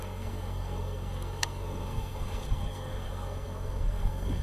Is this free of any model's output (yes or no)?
no